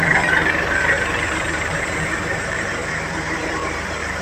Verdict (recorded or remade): remade